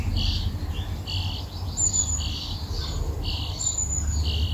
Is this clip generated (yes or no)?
no